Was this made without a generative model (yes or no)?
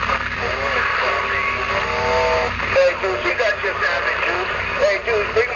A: yes